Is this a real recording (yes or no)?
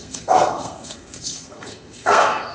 no